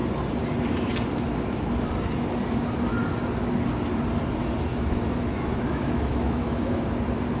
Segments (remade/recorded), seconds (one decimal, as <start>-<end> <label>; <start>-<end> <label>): 0.0-4.7 recorded; 4.7-6.8 remade; 6.8-7.4 recorded